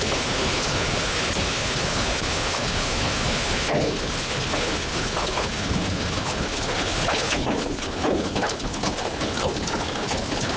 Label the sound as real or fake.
fake